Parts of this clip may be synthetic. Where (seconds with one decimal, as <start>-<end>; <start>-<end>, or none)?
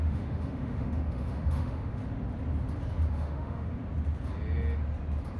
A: 0.0-2.0; 3.1-3.8